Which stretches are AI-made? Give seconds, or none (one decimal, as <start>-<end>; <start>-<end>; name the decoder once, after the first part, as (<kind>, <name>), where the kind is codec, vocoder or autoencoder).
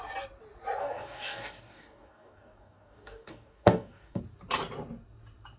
0.8-4.2 (codec, DAC)